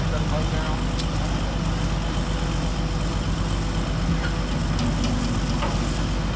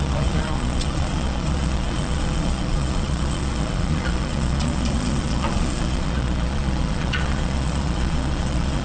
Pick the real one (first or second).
first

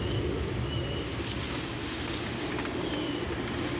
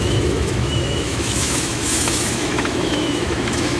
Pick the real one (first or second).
first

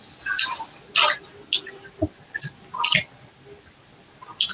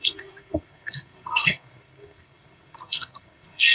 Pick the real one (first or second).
first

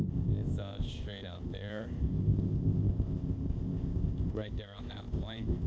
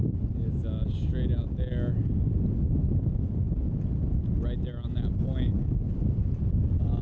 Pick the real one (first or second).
second